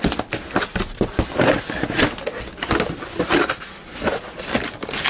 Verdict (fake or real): real